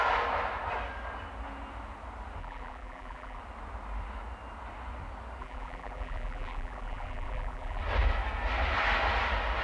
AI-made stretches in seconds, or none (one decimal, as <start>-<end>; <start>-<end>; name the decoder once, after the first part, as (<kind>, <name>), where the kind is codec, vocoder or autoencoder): 2.4-3.4 (vocoder, BigVGAN v2); 5.4-7.8